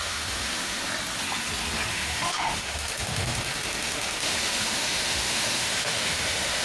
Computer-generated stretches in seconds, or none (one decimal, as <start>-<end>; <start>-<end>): 0.0-0.9; 1.9-6.6